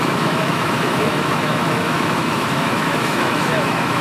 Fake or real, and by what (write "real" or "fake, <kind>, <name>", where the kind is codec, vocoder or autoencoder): fake, autoencoder, DAC-VAE